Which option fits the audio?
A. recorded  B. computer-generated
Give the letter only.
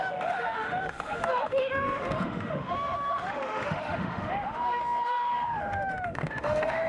B